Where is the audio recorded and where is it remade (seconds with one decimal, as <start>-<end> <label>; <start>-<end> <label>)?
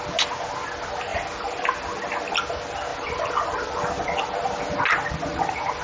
0.0-1.1 recorded; 1.1-1.6 remade; 1.6-2.9 recorded; 2.9-4.6 remade; 4.6-5.8 recorded